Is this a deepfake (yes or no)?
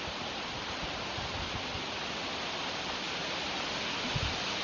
no